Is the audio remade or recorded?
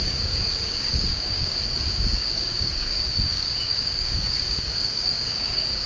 remade